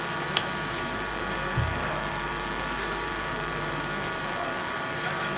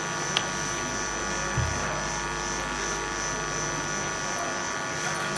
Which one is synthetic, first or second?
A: first